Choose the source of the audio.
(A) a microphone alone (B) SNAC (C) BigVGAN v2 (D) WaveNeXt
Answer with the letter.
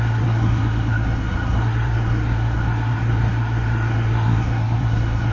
B